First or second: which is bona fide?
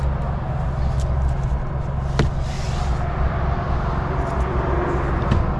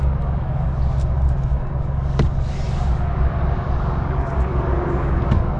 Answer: first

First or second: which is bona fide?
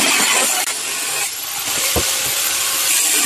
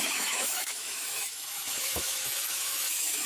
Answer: first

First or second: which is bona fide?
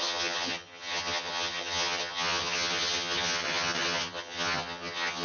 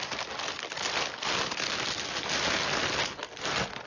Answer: second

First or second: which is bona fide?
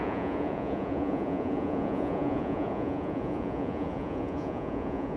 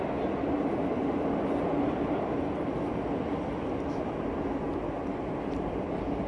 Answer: second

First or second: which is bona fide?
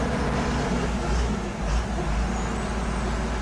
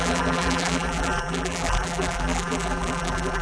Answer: first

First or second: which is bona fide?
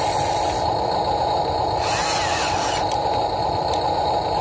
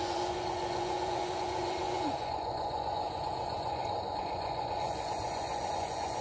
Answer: first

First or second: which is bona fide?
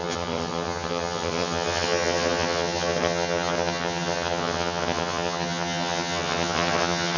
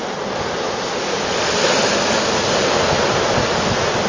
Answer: second